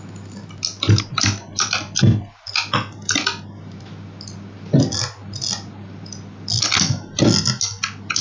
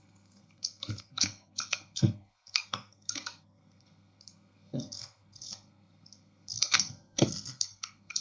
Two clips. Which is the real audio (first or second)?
first